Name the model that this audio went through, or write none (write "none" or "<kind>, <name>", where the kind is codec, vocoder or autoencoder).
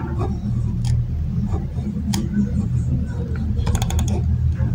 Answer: none